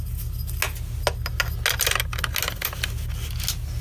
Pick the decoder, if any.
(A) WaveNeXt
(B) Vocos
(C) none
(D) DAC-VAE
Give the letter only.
C